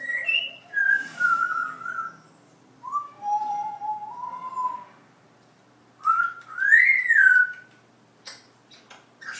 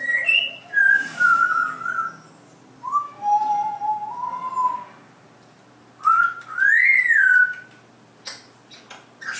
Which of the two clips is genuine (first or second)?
second